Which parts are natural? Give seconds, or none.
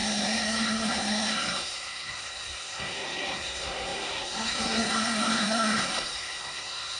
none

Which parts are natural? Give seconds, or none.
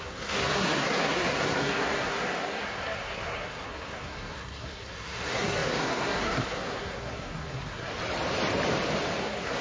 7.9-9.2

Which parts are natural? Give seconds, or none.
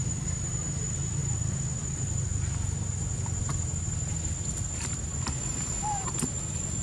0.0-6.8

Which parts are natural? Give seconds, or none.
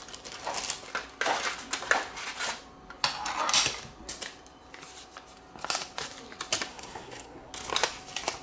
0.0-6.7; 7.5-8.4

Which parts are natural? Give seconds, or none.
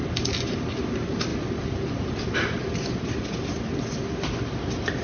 0.0-5.0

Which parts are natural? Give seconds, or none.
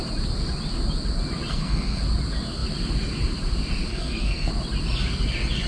0.0-1.5; 2.0-3.9; 4.5-5.7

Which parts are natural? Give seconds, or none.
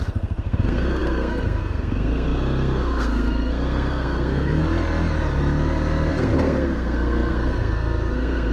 4.6-6.1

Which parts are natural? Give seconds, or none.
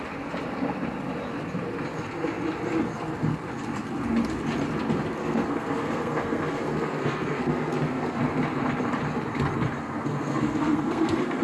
0.0-5.2; 8.2-9.8